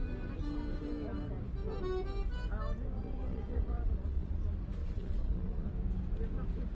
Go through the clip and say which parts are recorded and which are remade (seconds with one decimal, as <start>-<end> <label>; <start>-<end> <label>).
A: 0.0-3.0 recorded; 3.0-4.3 remade; 4.3-4.8 recorded; 4.8-5.7 remade; 5.7-6.7 recorded